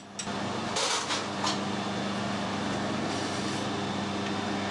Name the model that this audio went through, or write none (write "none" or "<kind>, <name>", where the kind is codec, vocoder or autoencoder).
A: none